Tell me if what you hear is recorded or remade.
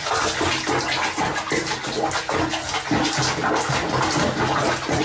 recorded